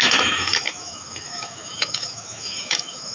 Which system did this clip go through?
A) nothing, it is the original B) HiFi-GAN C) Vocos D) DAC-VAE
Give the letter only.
D